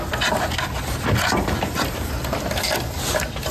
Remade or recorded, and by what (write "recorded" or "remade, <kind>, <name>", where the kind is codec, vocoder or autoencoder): recorded